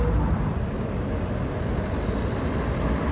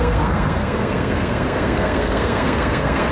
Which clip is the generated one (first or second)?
second